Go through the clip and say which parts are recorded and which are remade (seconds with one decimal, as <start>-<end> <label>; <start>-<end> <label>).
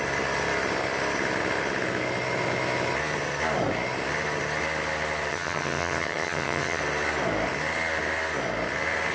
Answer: 0.0-5.3 recorded; 5.3-6.8 remade; 6.8-9.1 recorded